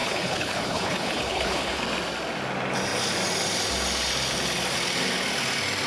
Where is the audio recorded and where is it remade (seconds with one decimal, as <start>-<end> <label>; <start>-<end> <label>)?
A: 0.0-1.8 remade; 1.8-5.9 recorded